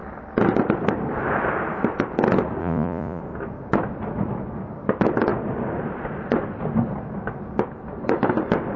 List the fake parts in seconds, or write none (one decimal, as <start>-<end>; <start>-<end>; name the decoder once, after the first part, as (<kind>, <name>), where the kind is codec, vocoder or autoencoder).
2.6-3.2 (vocoder, Vocos)